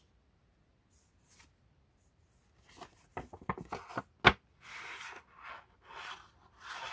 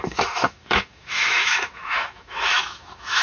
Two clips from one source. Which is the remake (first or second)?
second